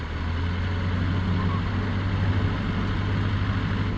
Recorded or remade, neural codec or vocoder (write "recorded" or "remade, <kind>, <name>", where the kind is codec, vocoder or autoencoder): recorded